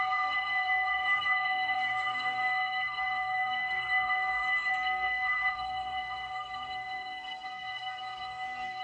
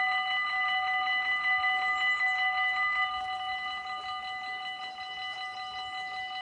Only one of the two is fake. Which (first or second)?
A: first